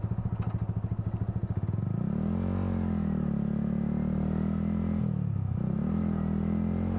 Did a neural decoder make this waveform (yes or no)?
no